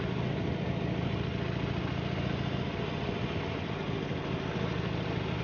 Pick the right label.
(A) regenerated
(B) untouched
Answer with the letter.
B